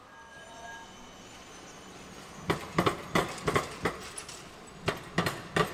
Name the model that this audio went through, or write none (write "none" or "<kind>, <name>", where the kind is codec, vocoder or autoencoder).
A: none